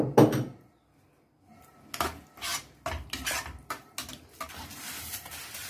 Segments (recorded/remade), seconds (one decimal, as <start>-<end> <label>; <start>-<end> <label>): 0.0-5.7 recorded

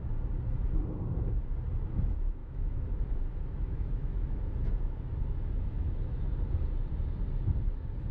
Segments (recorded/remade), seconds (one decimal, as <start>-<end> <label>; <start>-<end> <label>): 0.0-2.4 recorded; 2.4-6.2 remade; 6.2-8.1 recorded

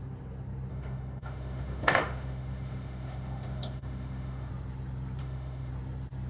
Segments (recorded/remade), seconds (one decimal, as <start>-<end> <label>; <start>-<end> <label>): 0.0-0.7 recorded; 0.7-4.5 remade; 4.5-5.2 recorded; 5.2-5.7 remade; 5.7-6.3 recorded

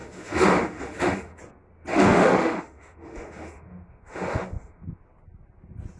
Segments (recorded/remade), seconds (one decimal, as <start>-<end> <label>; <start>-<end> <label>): 0.0-1.4 remade; 1.4-1.9 recorded; 1.9-5.0 remade; 5.0-6.0 recorded

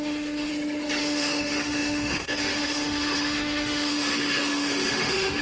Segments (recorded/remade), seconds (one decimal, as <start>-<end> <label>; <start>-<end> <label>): 0.0-0.5 remade; 0.5-1.0 recorded; 1.0-5.4 remade

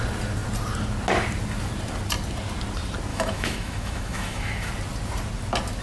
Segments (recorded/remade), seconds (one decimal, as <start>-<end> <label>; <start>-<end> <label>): 0.0-3.1 recorded; 3.1-4.7 remade; 4.7-5.8 recorded

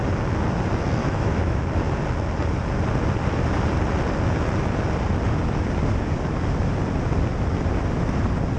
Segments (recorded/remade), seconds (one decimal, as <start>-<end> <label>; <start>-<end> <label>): 0.0-1.0 recorded; 1.0-1.6 remade; 1.6-8.6 recorded

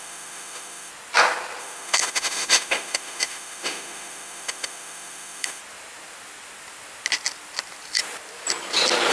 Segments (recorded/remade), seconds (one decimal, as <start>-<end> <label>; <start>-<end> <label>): 0.0-0.9 remade; 0.9-1.6 recorded; 1.6-5.6 remade; 5.6-9.1 recorded